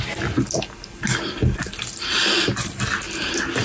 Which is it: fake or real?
real